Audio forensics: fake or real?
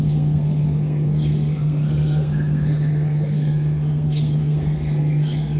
fake